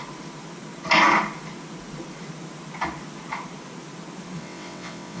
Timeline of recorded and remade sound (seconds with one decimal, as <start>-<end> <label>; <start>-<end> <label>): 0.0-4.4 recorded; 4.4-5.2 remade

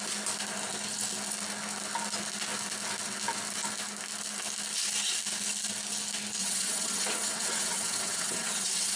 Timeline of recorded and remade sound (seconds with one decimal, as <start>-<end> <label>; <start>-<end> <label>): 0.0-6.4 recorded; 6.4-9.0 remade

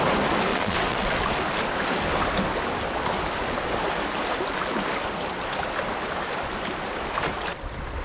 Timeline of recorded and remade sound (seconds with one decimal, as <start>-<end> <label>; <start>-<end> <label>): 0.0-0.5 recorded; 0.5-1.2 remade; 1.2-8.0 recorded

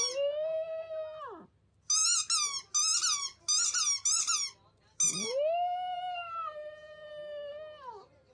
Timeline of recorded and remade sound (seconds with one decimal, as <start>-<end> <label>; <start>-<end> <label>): 0.0-8.3 recorded

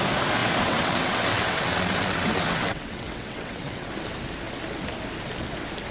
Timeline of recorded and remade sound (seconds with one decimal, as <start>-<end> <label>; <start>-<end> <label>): 0.0-0.4 recorded; 0.4-3.9 remade; 3.9-5.9 recorded

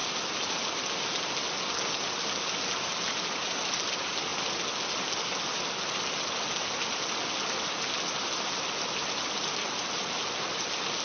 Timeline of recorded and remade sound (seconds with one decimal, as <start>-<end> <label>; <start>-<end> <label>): 0.0-11.0 recorded

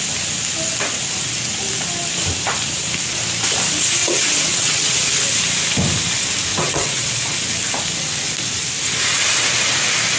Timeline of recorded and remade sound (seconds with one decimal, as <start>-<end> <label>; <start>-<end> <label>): 0.0-4.0 recorded; 4.0-5.0 remade; 5.0-6.5 recorded; 6.5-7.1 remade; 7.1-10.2 recorded

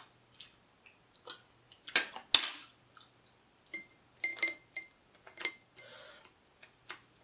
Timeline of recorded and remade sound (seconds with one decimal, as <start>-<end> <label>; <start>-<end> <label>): 0.0-7.2 recorded